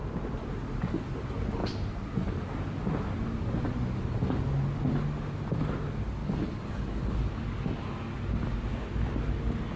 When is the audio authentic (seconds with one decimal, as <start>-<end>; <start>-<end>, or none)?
0.0-6.2; 7.7-9.8